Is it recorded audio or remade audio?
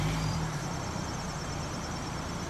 remade